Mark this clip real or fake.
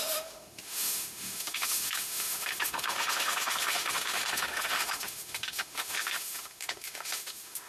fake